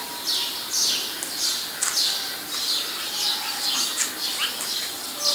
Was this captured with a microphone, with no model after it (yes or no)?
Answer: yes